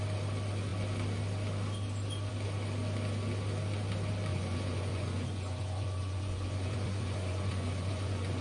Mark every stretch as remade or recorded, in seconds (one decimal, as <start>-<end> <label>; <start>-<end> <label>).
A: 0.0-4.3 recorded; 4.3-8.4 remade